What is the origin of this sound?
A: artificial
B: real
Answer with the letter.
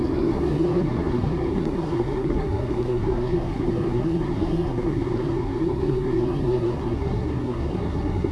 A